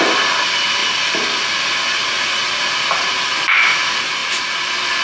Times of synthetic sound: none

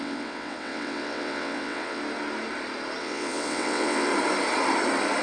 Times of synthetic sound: 0.0-2.0; 3.0-4.1

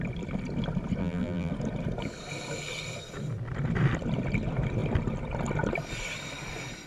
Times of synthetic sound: 1.0-1.5

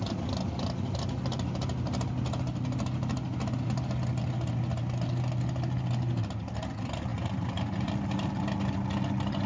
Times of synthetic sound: 7.1-8.3

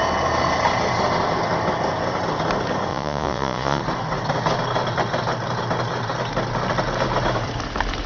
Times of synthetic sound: 2.9-3.8

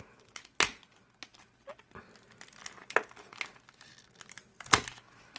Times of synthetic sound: none

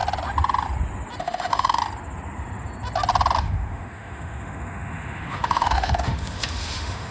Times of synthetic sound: 1.2-1.8; 3.4-7.1

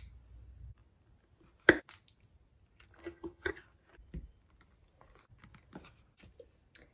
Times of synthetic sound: 3.0-3.5